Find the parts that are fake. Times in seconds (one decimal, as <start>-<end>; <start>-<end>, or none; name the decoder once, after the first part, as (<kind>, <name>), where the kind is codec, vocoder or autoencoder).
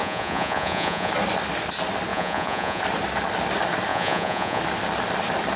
0.0-1.1 (vocoder, Vocos); 2.1-2.8; 3.9-4.6